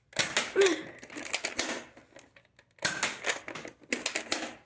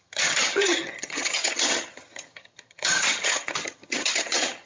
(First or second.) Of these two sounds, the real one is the first